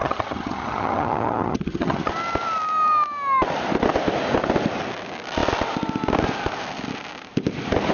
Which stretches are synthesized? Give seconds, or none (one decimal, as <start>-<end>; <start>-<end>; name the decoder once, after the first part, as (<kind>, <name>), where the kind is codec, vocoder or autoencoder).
0.0-2.1 (vocoder, HiFi-GAN)